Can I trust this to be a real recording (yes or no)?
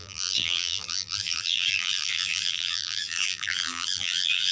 no